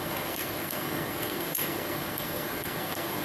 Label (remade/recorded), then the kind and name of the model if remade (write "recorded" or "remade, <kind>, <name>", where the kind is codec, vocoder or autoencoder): remade, codec, SNAC